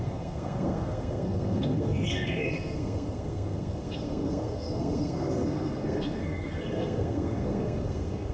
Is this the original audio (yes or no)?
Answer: no